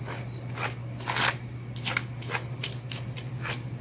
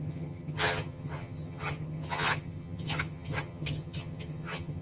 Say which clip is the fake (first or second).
second